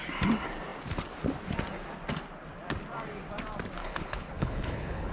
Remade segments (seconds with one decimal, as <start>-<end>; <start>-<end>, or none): 3.8-5.1